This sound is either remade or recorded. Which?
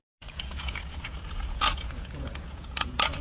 remade